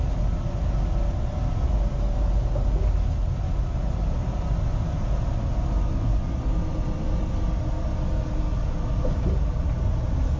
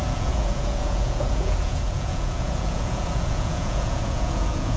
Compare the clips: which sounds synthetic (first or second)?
second